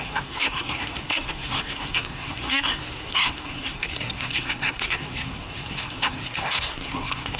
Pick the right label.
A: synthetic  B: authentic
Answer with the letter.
A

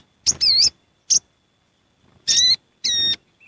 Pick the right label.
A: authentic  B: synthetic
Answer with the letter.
A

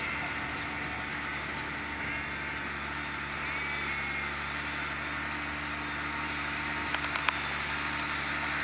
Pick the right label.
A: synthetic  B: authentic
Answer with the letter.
B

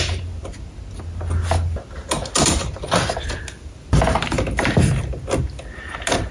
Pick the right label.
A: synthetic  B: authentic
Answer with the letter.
B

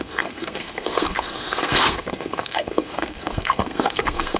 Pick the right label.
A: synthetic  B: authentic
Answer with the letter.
A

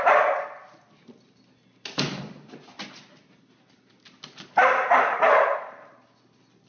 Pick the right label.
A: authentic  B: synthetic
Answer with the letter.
A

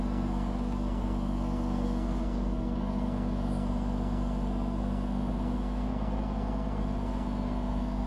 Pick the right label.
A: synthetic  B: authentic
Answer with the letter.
A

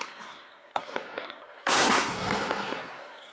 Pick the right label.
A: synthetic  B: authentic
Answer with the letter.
A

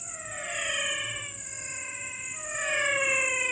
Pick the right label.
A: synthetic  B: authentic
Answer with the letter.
B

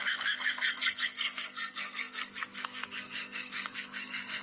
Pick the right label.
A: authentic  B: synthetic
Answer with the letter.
B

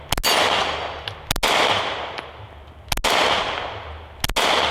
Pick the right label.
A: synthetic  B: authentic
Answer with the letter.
B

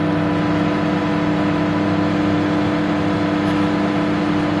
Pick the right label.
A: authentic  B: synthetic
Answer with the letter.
A